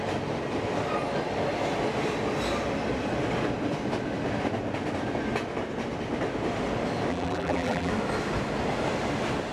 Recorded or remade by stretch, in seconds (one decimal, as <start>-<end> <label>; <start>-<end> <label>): 0.0-7.1 recorded; 7.1-7.9 remade; 7.9-9.5 recorded

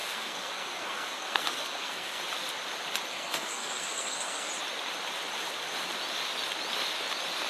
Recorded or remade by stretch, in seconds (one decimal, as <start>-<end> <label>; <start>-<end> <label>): 0.0-2.2 remade; 2.2-3.1 recorded; 3.1-4.5 remade; 4.5-7.5 recorded